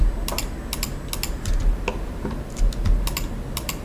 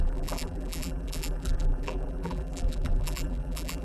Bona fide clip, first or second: first